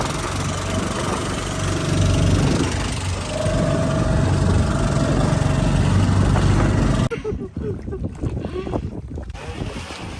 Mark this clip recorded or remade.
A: recorded